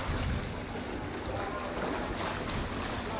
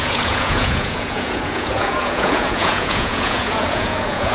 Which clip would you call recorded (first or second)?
first